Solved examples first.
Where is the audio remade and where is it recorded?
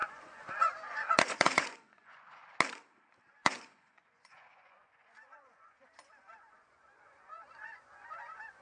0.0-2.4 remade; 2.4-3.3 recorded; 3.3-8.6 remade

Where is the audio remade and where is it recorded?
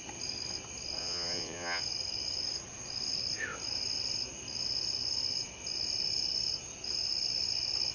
0.0-1.0 recorded; 1.0-1.8 remade; 1.8-7.9 recorded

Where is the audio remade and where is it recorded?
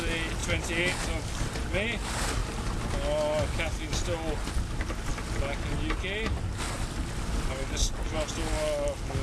0.0-9.2 recorded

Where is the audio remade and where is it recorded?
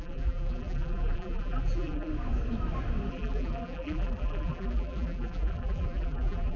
0.0-2.1 remade; 2.1-3.1 recorded; 3.1-6.6 remade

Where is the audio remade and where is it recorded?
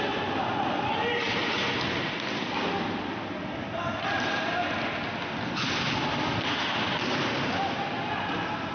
0.0-8.7 recorded